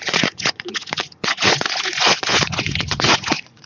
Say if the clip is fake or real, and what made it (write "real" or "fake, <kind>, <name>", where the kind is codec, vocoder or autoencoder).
fake, vocoder, Vocos